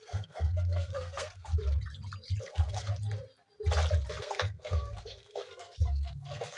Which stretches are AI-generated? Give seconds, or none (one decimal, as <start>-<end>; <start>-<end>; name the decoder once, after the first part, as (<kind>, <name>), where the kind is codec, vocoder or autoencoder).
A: 0.0-1.5 (codec, SNAC); 2.4-2.9; 4.2-6.6